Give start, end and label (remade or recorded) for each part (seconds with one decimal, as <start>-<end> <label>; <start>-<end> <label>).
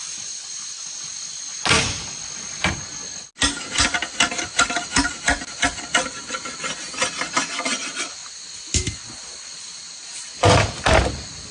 0.0-11.5 recorded